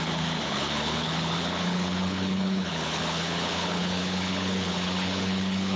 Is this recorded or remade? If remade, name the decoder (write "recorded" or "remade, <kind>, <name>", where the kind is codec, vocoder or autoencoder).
remade, codec, HILCodec